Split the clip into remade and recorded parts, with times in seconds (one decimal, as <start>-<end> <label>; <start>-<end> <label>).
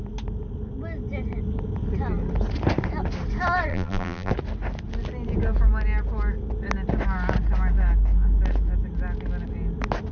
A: 0.0-3.7 recorded; 3.7-4.3 remade; 4.3-10.1 recorded